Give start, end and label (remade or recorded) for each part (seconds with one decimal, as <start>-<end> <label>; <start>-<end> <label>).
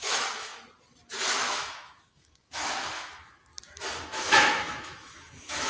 0.0-0.5 remade; 0.5-1.3 recorded; 1.3-3.5 remade; 3.5-4.2 recorded; 4.2-5.7 remade